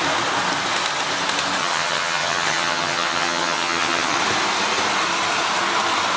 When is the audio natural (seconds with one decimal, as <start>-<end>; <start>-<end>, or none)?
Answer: 0.0-1.6; 4.2-6.2